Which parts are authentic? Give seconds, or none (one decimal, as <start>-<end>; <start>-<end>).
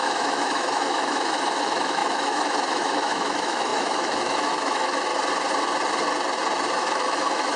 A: 5.1-6.7